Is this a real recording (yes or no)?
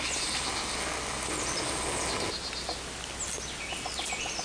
yes